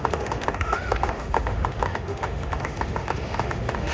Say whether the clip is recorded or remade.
remade